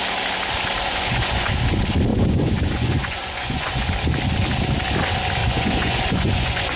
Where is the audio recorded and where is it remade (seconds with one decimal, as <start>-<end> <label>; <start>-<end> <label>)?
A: 0.0-0.9 recorded; 0.9-1.5 remade; 1.5-2.1 recorded; 2.1-3.9 remade; 3.9-5.4 recorded; 5.4-6.8 remade

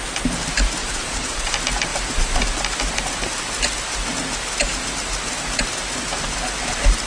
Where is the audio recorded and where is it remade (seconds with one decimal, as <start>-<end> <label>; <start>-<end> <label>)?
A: 0.0-0.8 recorded; 0.8-1.5 remade; 1.5-7.1 recorded